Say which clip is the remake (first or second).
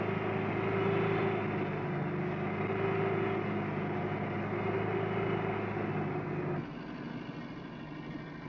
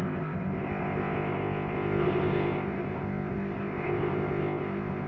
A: second